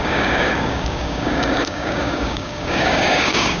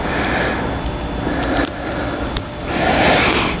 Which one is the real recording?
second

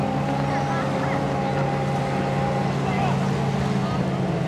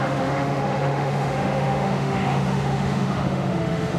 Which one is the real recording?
first